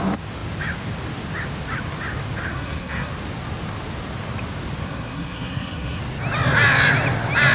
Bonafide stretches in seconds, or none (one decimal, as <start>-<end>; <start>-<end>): 0.0-2.5; 3.1-4.8; 6.0-7.5